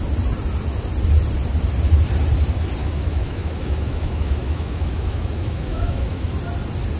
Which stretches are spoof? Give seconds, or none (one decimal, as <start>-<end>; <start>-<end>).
2.8-6.3